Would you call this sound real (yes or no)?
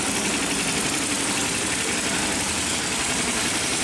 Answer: yes